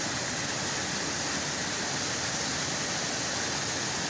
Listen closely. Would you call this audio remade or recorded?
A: recorded